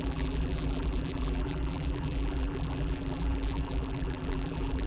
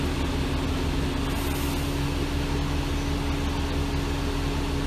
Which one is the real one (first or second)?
second